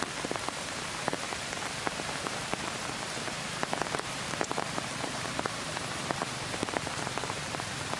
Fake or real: fake